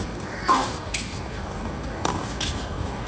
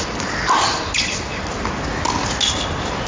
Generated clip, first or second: first